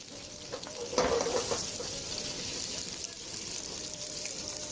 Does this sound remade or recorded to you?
recorded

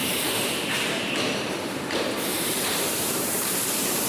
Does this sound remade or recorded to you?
remade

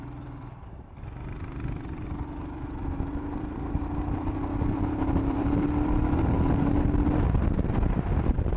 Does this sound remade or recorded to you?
remade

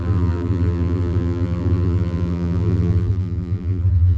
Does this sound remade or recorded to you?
remade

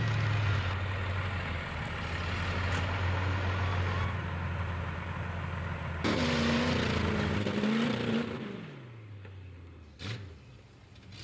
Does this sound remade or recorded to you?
recorded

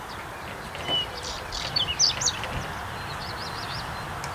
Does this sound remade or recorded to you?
recorded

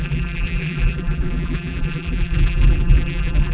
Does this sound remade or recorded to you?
remade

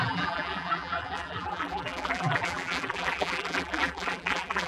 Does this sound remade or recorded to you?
remade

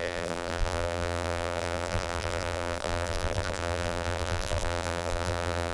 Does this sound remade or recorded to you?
remade